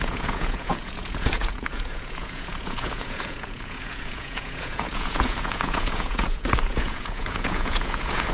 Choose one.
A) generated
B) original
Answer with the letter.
A